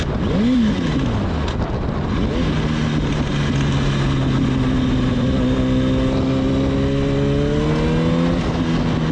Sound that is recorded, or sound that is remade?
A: recorded